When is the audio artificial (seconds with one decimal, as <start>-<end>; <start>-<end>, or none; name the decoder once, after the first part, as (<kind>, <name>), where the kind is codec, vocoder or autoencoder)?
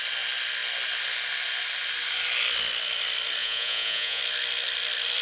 3.4-4.2 (vocoder, Vocos)